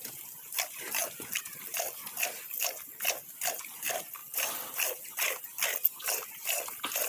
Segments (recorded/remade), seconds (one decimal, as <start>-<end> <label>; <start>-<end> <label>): 0.0-4.2 recorded; 4.2-5.4 remade; 5.4-7.1 recorded